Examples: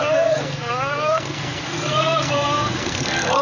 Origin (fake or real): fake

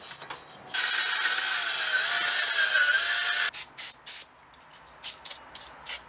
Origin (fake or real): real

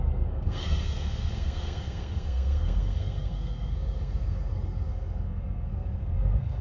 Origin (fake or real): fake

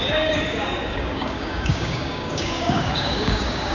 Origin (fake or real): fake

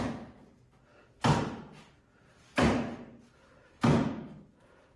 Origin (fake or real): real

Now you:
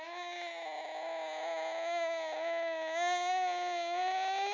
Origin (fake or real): real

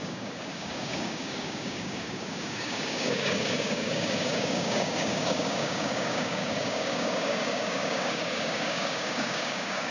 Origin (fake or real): fake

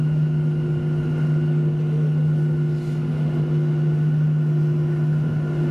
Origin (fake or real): real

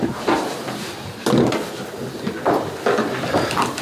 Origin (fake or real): real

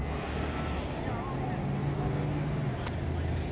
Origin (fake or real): real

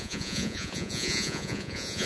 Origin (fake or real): fake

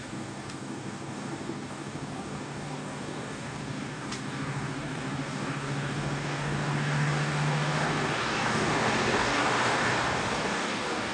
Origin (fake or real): fake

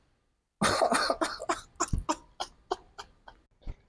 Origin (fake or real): real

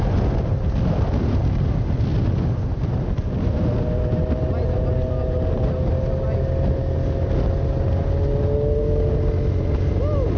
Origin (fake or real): real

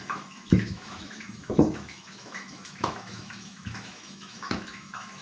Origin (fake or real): fake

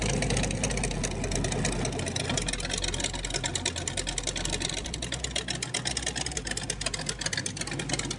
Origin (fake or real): real